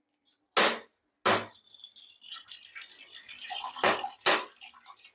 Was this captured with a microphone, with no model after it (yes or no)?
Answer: yes